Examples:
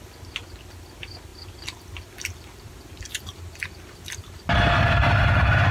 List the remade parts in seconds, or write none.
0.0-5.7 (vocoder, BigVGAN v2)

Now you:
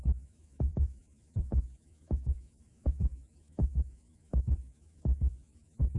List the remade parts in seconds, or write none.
0.0-6.0 (autoencoder, DAC-VAE)